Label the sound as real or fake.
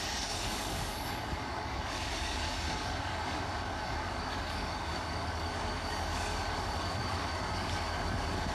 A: fake